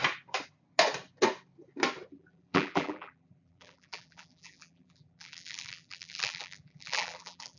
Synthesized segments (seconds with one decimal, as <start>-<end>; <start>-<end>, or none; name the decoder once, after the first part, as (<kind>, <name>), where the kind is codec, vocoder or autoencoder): 2.1-7.6 (vocoder, BigVGAN v2)

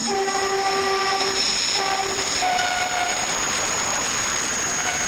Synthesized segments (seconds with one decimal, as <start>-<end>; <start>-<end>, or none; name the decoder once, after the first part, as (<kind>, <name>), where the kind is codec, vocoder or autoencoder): 0.0-1.6 (vocoder, BigVGAN v2); 2.0-4.5

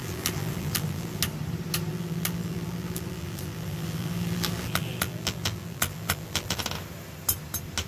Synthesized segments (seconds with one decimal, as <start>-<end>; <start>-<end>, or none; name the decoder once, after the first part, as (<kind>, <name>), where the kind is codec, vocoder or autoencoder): 0.0-1.2 (vocoder, BigVGAN v2); 1.9-6.6

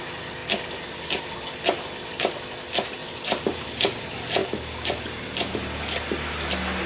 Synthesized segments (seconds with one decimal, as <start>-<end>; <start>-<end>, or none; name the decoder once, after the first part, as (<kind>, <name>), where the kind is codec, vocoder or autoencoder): 3.0-4.0 (vocoder, BigVGAN v2)

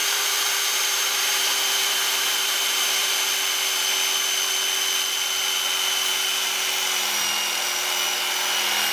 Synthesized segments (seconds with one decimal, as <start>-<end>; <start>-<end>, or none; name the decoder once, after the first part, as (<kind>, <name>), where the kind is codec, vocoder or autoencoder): 0.0-3.1 (vocoder, BigVGAN v2)

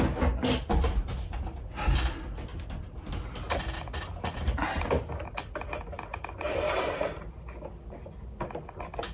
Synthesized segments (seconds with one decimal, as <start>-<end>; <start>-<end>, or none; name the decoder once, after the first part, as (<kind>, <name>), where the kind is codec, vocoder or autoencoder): 6.1-7.2 (vocoder, BigVGAN v2)

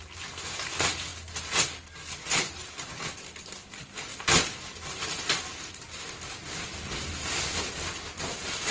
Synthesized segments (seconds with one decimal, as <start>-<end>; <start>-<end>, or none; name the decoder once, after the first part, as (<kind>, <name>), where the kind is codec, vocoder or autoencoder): 0.0-1.1 (vocoder, BigVGAN v2); 2.0-4.1; 7.7-8.7

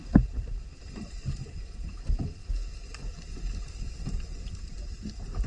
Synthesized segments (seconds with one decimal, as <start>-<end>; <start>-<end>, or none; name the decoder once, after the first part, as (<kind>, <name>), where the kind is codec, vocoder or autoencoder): 0.0-2.4 (vocoder, BigVGAN v2); 3.6-5.5